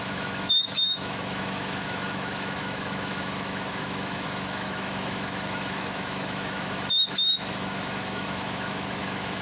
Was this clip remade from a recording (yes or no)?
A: yes